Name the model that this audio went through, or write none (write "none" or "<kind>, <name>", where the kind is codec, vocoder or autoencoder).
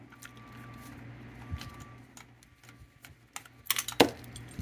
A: none